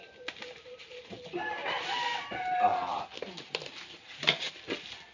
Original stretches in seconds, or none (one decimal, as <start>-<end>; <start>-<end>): 0.0-2.7; 4.5-5.1